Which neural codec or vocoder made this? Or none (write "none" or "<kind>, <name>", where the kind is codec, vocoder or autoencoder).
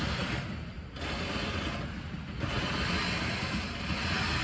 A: none